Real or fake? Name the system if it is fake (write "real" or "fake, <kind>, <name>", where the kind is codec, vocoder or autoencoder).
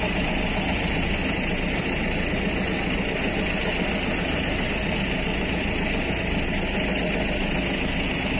real